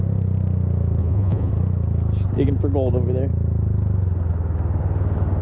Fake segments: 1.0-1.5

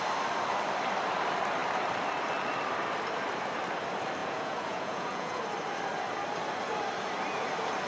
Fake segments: 4.2-5.4

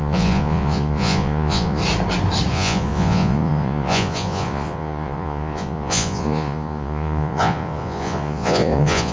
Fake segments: 0.0-1.8; 2.5-9.1

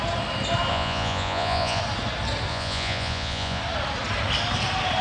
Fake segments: 0.7-1.8; 2.5-3.6

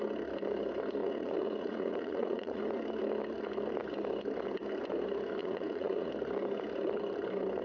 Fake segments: 1.0-2.6; 5.4-6.1

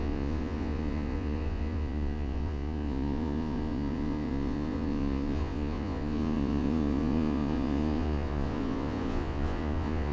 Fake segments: 0.0-10.1